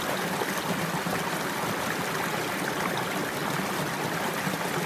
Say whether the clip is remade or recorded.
recorded